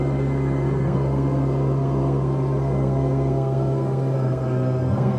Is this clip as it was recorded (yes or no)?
no